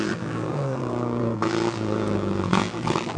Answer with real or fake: fake